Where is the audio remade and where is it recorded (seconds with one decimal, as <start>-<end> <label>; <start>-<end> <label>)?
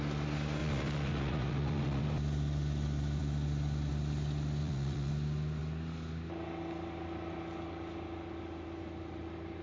0.0-0.6 recorded; 0.6-2.0 remade; 2.0-4.6 recorded; 4.6-5.1 remade; 5.1-9.6 recorded